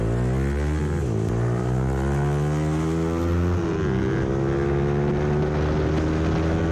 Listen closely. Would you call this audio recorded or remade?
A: recorded